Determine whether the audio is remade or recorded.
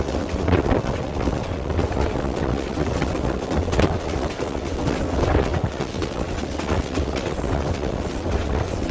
remade